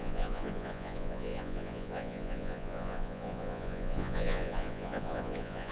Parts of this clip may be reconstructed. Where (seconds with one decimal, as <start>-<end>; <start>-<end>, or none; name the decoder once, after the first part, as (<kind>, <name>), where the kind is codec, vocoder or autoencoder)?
0.0-5.7 (vocoder, Vocos)